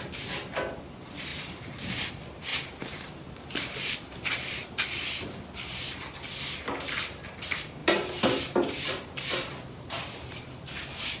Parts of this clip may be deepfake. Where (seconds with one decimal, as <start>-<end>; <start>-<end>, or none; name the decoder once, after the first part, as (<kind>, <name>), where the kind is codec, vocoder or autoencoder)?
1.3-2.1 (vocoder, BigVGAN v2); 2.5-4.9; 7.8-11.2